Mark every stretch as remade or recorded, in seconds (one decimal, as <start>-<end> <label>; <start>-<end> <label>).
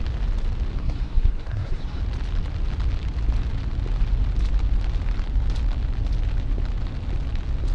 0.0-0.8 recorded; 0.8-2.0 remade; 2.0-7.7 recorded